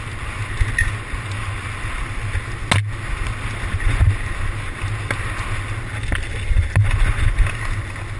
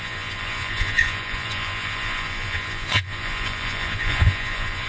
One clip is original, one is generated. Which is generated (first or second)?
second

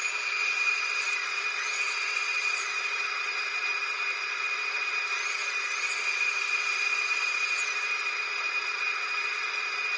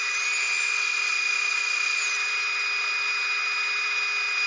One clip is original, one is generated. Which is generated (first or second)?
first